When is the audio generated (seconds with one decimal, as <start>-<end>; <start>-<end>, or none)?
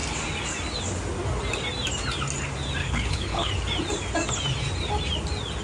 2.8-3.5